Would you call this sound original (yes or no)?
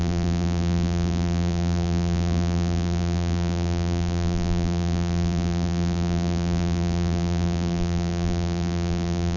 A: no